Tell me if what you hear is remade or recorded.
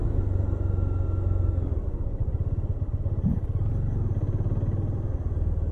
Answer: recorded